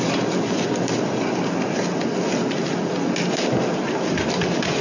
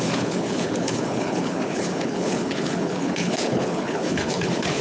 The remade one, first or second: second